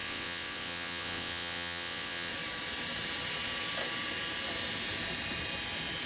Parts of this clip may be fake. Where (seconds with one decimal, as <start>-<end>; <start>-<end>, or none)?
0.0-2.3